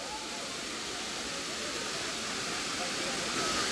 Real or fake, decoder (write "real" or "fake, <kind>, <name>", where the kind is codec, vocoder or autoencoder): real